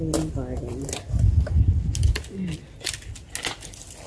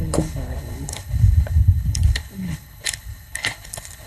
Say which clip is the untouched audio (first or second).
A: first